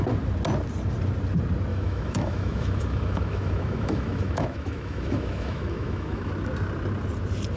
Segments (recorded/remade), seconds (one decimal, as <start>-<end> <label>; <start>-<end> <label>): 0.0-1.7 recorded; 1.7-6.3 remade; 6.3-7.6 recorded